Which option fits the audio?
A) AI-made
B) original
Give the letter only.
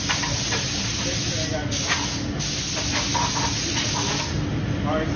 B